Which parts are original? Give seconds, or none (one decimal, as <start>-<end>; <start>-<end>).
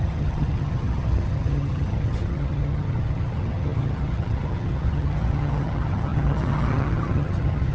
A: none